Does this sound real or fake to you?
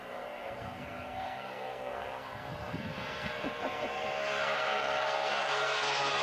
fake